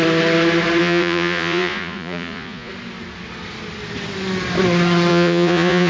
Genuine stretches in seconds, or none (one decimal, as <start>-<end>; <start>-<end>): 0.0-0.8; 2.7-5.1